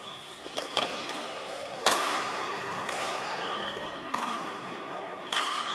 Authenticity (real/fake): fake